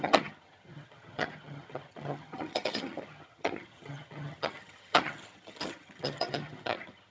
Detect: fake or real fake